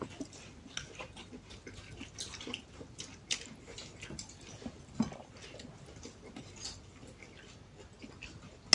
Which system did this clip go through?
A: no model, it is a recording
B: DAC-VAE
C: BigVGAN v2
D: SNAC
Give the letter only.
A